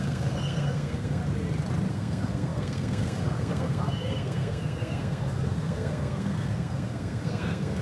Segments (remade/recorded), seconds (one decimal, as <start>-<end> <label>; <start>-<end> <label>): 0.0-1.2 remade; 1.2-1.9 recorded; 1.9-7.8 remade